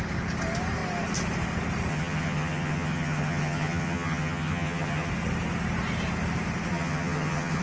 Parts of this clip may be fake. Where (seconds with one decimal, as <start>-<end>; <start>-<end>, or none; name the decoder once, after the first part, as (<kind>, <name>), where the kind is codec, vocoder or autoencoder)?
1.9-5.1 (vocoder, HiFi-GAN); 6.7-7.6